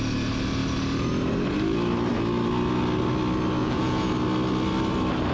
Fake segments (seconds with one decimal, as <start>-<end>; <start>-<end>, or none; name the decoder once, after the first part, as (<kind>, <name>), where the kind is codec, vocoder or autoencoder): 3.6-4.1 (vocoder, Vocos)